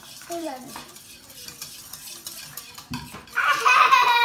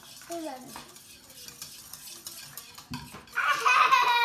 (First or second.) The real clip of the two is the second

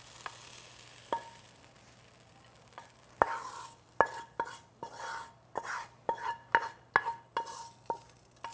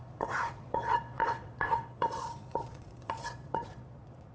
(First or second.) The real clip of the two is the first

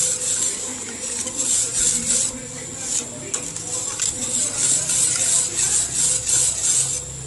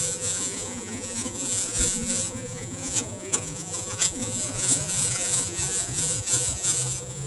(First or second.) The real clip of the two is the first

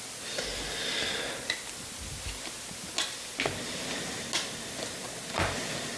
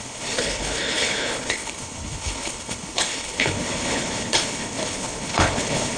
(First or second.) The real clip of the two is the first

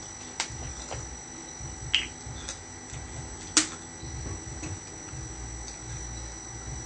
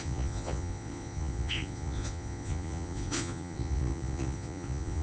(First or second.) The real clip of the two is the first